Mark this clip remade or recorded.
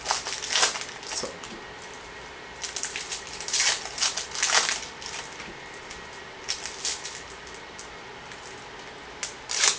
recorded